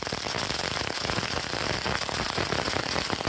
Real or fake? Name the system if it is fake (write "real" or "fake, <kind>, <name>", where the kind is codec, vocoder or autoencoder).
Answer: real